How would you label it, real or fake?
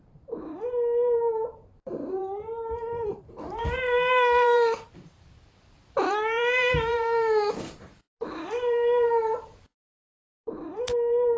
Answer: fake